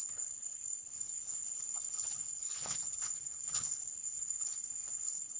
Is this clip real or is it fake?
fake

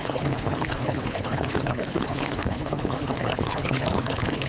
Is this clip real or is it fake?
fake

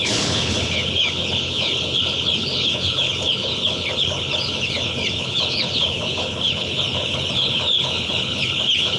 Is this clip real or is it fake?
fake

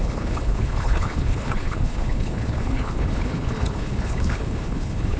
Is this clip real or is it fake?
fake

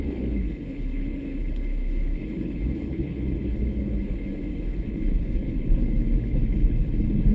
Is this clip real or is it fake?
fake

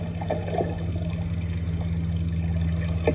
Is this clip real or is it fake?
real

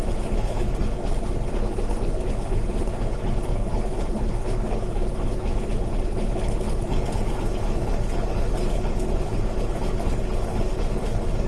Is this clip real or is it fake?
fake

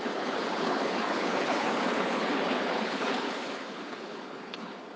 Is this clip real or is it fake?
fake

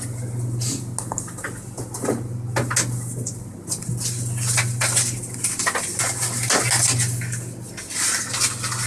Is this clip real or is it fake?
real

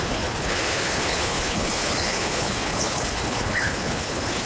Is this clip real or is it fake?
fake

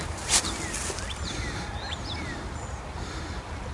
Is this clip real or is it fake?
real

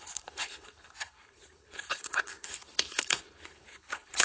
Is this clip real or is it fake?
fake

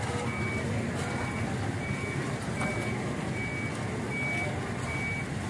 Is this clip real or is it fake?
real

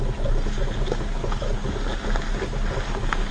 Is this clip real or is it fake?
real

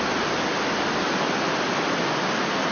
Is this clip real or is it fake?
real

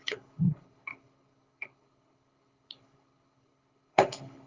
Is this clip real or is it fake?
fake